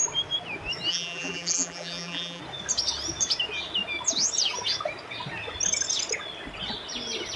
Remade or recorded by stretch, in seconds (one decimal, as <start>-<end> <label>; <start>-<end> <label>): 0.0-0.9 recorded; 0.9-2.4 remade; 2.4-7.4 recorded